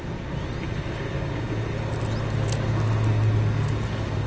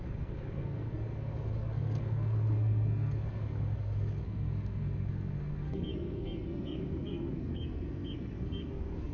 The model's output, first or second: second